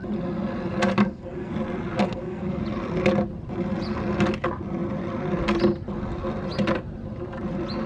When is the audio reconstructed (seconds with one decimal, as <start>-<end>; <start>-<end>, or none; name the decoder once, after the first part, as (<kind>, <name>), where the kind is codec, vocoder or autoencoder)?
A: 1.0-1.5 (codec, SNAC); 2.0-2.6